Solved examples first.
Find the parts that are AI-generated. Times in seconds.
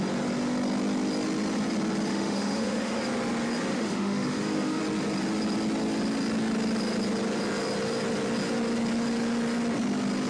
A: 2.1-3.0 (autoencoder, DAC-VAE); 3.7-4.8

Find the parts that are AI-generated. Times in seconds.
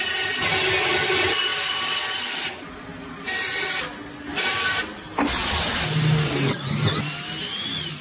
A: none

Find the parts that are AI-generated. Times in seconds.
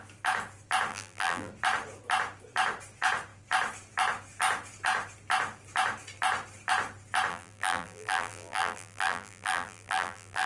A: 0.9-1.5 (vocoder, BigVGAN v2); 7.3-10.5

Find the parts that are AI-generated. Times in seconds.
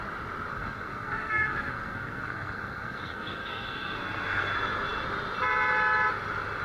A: 0.5-4.5 (codec, SNAC)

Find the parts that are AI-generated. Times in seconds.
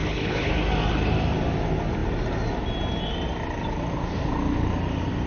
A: 0.0-0.5 (codec, HILCodec)